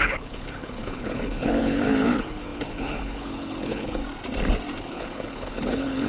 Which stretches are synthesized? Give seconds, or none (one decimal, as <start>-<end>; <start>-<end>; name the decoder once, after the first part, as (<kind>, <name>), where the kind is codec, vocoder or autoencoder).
0.0-4.0 (codec, HILCodec); 4.8-6.1